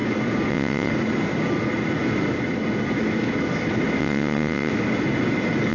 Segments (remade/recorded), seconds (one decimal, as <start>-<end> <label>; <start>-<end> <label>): 0.0-0.5 recorded; 0.5-0.9 remade; 0.9-4.0 recorded; 4.0-4.7 remade; 4.7-5.7 recorded